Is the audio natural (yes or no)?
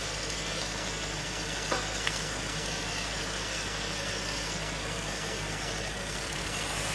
no